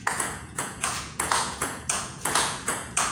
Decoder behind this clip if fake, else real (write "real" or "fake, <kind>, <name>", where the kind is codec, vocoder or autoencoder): fake, vocoder, Vocos